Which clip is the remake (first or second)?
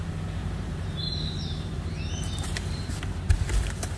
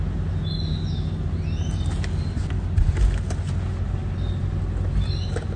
first